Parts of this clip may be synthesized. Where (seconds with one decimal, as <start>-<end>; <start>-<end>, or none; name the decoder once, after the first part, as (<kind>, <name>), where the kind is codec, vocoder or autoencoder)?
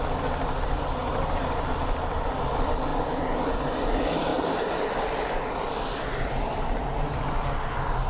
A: 1.0-2.3 (vocoder, BigVGAN v2); 4.3-6.6